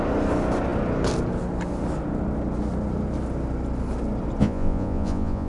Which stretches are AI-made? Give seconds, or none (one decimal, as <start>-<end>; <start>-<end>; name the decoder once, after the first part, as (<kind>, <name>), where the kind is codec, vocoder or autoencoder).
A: 4.4-5.5 (vocoder, Vocos)